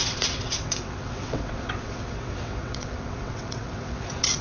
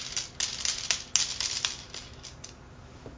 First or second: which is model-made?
first